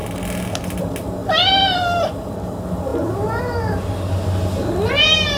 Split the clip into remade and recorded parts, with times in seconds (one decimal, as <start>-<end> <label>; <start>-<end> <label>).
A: 0.0-5.4 recorded